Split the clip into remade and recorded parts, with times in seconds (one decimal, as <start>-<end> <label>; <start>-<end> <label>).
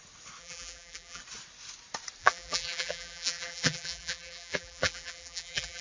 0.0-0.4 recorded; 0.4-1.2 remade; 1.2-2.2 recorded; 2.2-5.8 remade